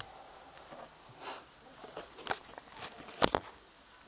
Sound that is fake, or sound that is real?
real